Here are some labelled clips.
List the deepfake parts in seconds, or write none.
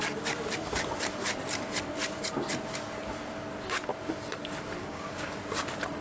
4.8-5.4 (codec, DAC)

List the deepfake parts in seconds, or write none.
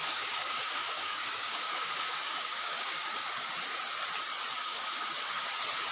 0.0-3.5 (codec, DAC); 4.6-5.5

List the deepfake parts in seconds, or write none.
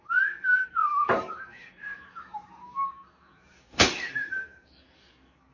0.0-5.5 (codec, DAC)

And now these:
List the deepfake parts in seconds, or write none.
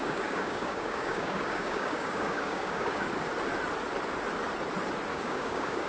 0.0-3.1 (codec, DAC); 5.1-5.9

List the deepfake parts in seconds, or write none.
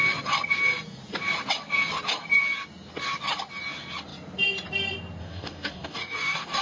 5.2-6.6 (codec, DAC)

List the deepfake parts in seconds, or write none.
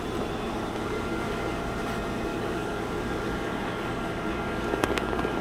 0.7-1.6 (codec, DAC); 2.3-5.4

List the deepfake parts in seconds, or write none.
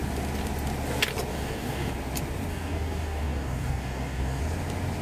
1.3-1.9 (codec, DAC); 2.5-4.4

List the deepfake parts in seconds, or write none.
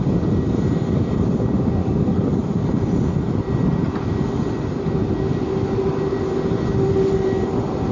1.8-2.4 (codec, DAC)